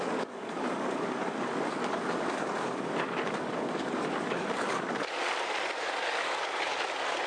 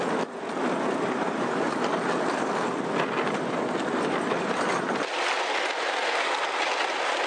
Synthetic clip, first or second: first